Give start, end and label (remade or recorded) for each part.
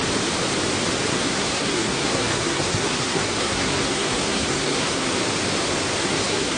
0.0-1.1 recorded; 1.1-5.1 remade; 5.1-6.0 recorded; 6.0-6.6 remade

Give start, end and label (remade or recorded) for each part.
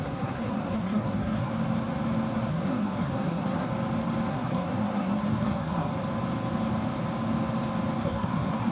0.0-1.5 remade; 1.5-2.5 recorded; 2.5-3.7 remade; 3.7-4.3 recorded; 4.3-5.9 remade; 5.9-8.0 recorded; 8.0-8.7 remade